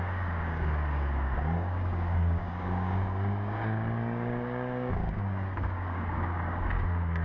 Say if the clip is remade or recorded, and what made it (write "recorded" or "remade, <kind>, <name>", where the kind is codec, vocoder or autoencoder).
remade, codec, DAC